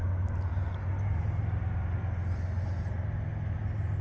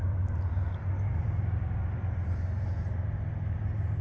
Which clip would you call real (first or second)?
first